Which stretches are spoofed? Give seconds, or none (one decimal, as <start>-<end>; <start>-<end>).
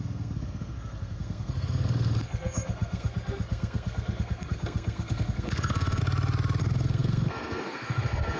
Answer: 0.0-6.0; 6.6-8.4